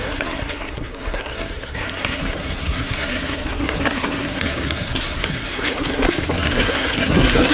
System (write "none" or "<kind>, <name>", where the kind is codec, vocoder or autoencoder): codec, SNAC